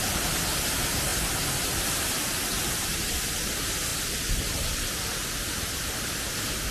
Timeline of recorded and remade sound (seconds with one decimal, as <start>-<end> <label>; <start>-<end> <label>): 0.0-6.7 recorded